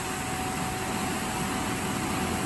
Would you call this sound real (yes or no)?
yes